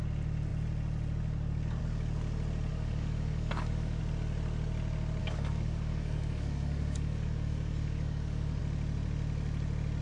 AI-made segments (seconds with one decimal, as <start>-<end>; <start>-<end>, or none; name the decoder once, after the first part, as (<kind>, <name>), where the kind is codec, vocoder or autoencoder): 2.7-4.0 (codec, DAC); 5.2-8.6

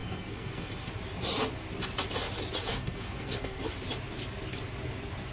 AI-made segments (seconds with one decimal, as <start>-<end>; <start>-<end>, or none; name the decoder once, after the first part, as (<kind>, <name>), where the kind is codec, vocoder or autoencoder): 0.0-0.9 (codec, SNAC); 2.7-3.6

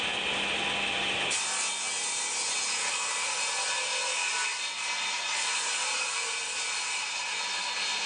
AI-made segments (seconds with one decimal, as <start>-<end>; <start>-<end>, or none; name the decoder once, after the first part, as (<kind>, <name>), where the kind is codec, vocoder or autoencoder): none

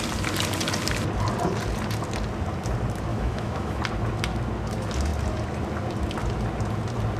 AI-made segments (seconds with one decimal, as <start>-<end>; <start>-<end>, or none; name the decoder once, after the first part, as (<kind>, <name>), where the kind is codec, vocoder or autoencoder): 3.1-3.8 (autoencoder, DAC-VAE)

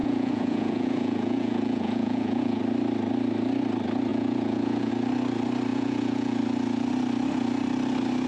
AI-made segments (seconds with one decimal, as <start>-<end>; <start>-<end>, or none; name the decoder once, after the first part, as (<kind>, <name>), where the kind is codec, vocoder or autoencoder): 0.0-2.6 (vocoder, Vocos); 4.1-4.9; 5.7-6.4